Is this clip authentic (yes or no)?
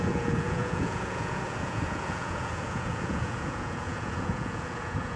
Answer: no